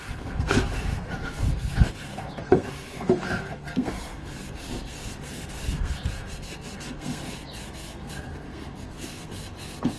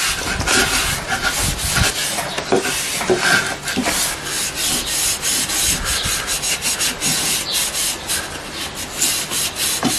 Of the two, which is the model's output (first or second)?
first